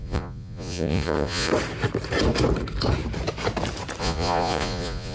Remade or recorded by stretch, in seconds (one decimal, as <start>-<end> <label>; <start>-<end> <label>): 0.0-1.5 remade; 1.5-4.0 recorded; 4.0-5.1 remade